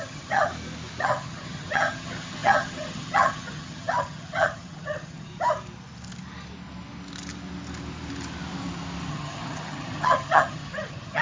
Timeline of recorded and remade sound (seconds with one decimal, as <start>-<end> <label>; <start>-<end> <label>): 0.0-0.5 remade; 0.5-1.0 recorded; 1.0-5.3 remade; 5.3-9.1 recorded; 9.1-11.2 remade

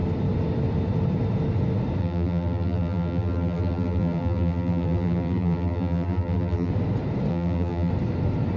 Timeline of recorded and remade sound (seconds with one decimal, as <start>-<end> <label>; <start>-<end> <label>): 0.0-2.0 recorded; 2.0-6.7 remade; 6.7-7.3 recorded; 7.3-7.9 remade; 7.9-8.6 recorded